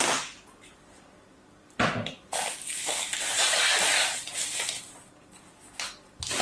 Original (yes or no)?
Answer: yes